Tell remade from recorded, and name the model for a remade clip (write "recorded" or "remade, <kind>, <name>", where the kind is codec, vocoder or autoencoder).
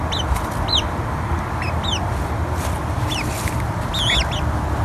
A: recorded